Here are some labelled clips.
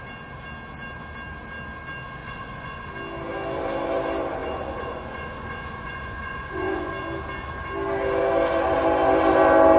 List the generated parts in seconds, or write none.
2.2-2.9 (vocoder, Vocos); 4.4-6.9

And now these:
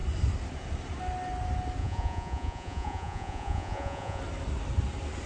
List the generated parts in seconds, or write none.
1.8-4.2 (vocoder, Vocos)

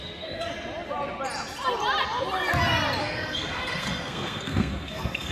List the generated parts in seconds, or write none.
0.0-0.5 (codec, SNAC); 3.0-5.3

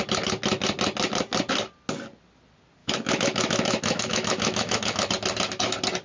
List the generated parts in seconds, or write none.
2.8-5.1 (autoencoder, DAC-VAE)